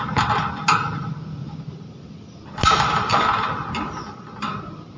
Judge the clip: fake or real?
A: real